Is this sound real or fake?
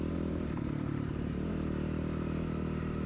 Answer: fake